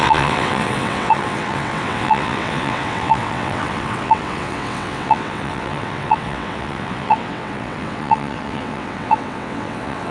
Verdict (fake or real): fake